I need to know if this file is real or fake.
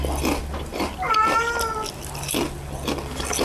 real